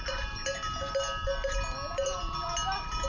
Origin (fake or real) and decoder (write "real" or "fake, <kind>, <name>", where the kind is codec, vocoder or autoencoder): real